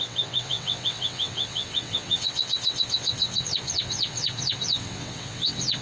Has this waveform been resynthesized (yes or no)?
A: yes